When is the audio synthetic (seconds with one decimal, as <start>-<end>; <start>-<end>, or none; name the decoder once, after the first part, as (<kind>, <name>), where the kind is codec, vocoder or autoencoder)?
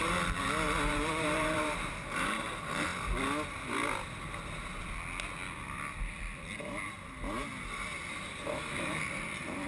0.9-2.9 (vocoder, BigVGAN v2); 8.1-9.7